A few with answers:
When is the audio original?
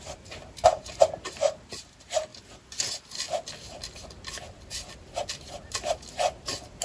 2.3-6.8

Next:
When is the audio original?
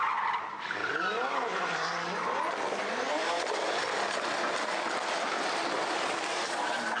0.0-0.8; 4.7-7.0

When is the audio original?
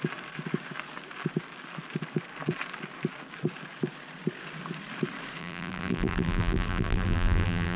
0.0-5.4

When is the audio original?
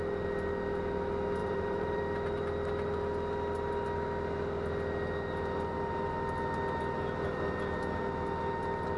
0.0-1.4; 2.0-9.0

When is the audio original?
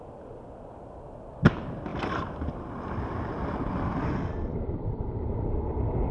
0.0-1.9; 3.7-4.5; 5.6-6.1